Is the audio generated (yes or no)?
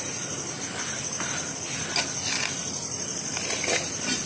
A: no